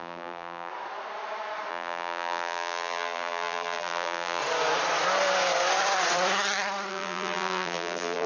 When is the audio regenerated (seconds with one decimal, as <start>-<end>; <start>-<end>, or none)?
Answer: 0.0-0.7; 1.7-4.4; 6.9-8.3